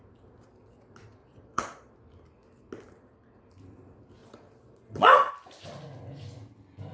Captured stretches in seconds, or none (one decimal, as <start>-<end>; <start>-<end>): 0.0-1.2; 1.9-4.2; 5.3-6.9